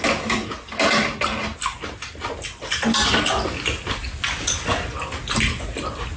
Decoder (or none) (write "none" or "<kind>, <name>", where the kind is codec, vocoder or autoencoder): none